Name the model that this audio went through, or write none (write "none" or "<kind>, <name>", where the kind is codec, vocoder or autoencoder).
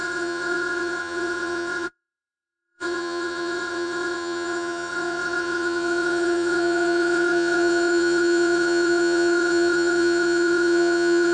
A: vocoder, WaveNeXt